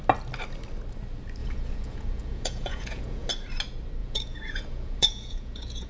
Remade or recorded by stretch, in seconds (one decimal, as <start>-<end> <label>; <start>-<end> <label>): 0.0-1.4 recorded; 1.4-3.3 remade; 3.3-4.0 recorded; 4.0-5.9 remade